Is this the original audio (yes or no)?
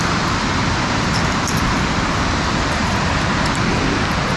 yes